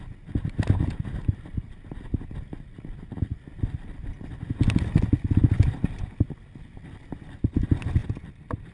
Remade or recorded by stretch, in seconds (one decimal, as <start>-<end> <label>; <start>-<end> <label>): 0.0-8.7 recorded